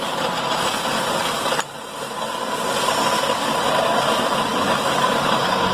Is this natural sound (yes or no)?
yes